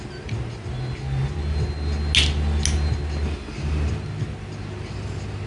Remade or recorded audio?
recorded